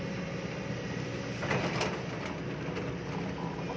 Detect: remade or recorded recorded